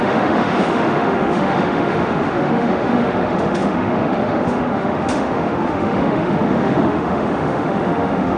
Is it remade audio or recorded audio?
remade